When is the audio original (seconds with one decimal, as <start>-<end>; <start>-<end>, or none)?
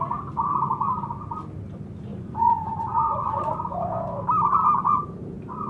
0.0-2.1; 3.5-5.7